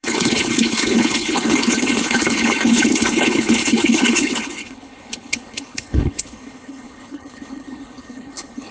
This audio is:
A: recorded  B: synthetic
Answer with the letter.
B